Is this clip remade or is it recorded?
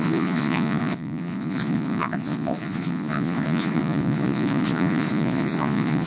remade